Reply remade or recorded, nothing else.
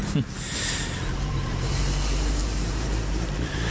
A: remade